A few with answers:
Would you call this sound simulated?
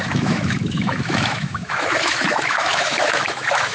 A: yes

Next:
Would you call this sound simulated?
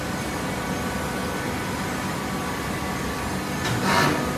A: no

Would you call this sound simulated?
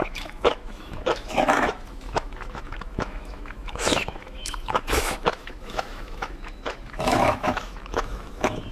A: yes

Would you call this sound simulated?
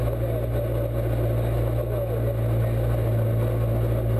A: no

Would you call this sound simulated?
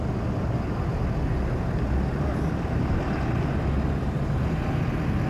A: no